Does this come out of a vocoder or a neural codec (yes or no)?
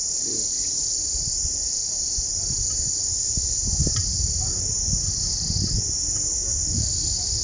no